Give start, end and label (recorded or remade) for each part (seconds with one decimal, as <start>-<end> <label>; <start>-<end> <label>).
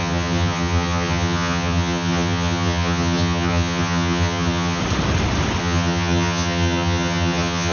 0.0-4.8 remade; 4.8-5.6 recorded; 5.6-7.7 remade